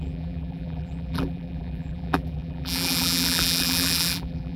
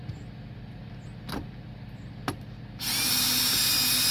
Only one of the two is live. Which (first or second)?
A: second